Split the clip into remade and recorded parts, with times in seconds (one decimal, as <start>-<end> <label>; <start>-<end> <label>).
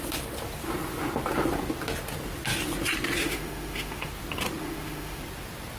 0.0-3.2 recorded; 3.2-4.1 remade; 4.1-4.6 recorded; 4.6-5.2 remade; 5.2-5.8 recorded